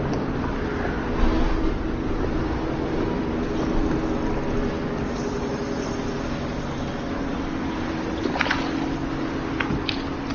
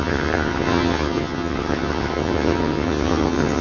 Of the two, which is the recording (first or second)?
first